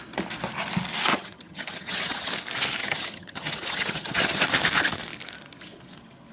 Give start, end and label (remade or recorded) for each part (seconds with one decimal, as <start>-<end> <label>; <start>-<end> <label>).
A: 0.0-1.1 recorded; 1.1-2.3 remade; 2.3-2.8 recorded; 2.8-4.4 remade; 4.4-6.3 recorded